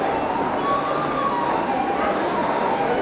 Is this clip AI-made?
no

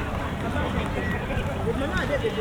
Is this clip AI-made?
no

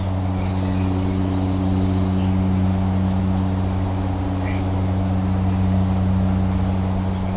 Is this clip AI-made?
no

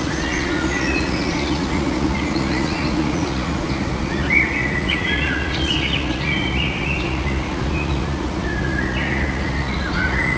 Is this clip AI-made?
yes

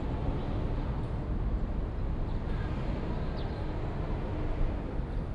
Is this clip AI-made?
no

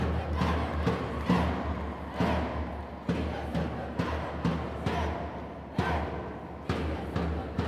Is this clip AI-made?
no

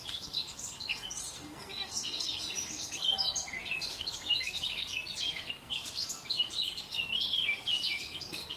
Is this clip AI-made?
yes